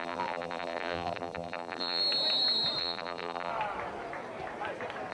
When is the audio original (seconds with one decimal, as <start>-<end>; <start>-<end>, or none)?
2.0-2.8; 3.5-5.1